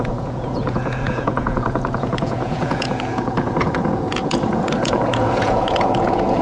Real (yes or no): no